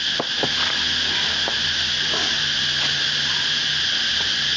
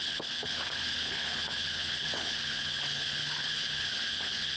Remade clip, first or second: second